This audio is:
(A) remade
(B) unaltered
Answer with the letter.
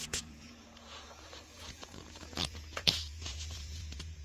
A